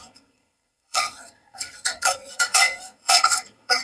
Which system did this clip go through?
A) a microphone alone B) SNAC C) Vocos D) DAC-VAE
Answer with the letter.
B